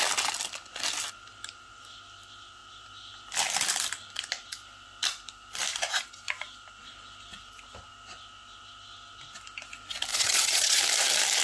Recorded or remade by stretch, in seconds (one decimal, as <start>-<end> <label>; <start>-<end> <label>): 0.0-10.1 recorded; 10.1-10.8 remade; 10.8-11.4 recorded